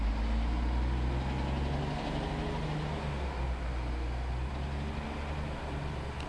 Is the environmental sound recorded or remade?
recorded